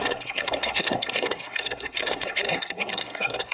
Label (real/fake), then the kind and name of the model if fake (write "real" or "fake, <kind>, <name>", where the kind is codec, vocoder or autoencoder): fake, codec, SNAC